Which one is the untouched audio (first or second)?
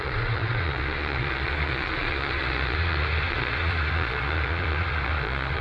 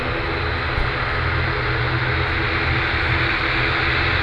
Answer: second